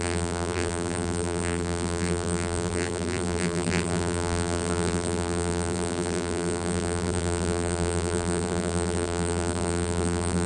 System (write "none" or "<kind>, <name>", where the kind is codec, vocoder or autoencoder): vocoder, BigVGAN v2